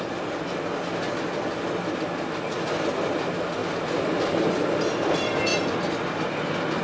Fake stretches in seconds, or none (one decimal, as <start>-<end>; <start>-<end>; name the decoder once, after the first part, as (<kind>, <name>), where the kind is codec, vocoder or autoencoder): none